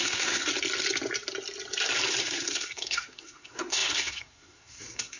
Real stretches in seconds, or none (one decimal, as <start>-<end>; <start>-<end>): 0.5-2.2